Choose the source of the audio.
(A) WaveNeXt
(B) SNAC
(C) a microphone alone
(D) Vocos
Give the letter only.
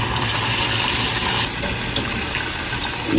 C